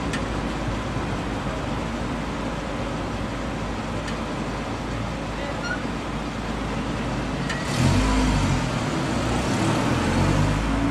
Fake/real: real